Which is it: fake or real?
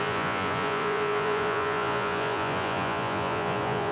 fake